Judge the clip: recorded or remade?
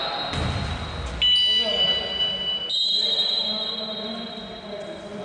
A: recorded